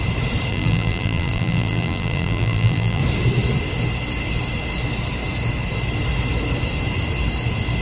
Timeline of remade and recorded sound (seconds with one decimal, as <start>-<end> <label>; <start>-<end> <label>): 0.0-0.5 recorded; 0.5-3.0 remade; 3.0-7.8 recorded